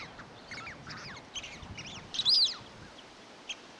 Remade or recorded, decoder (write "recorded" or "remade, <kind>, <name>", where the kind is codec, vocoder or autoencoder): recorded